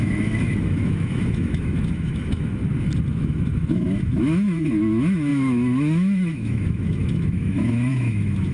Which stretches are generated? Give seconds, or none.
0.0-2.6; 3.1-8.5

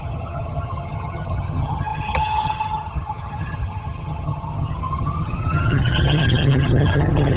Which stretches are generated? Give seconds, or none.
0.0-7.4

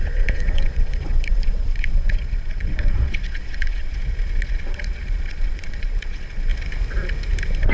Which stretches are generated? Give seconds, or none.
0.0-6.5